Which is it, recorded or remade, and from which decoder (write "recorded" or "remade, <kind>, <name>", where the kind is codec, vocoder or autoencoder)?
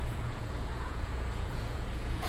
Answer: remade, vocoder, Vocos